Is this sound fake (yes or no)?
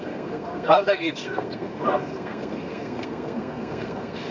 yes